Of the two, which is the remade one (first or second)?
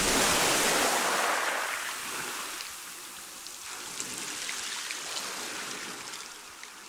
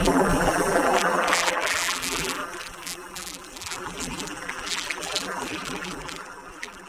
second